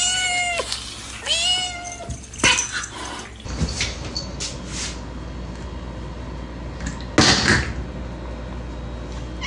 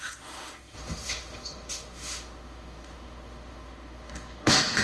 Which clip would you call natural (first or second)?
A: first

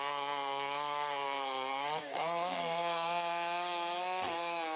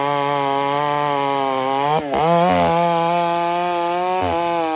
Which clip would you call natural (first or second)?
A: second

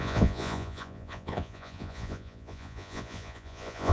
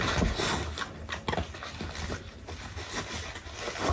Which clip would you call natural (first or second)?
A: second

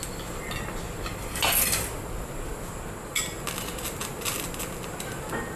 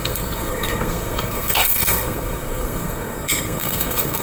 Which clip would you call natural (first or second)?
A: first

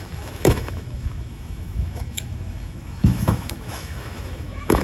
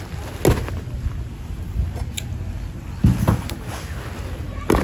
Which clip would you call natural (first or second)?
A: second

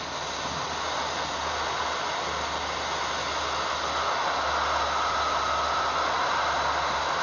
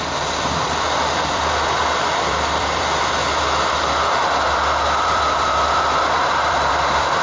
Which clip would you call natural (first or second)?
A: first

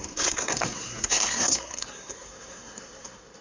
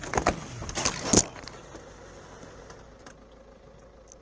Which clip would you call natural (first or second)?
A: second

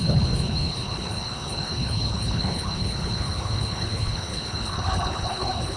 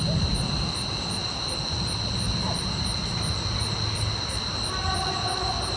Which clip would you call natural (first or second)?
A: second